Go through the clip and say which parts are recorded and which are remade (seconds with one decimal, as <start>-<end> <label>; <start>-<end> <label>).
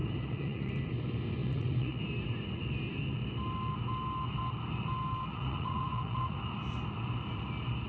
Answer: 0.0-0.7 remade; 0.7-1.4 recorded; 1.4-2.0 remade; 2.0-5.3 recorded; 5.3-6.4 remade; 6.4-7.9 recorded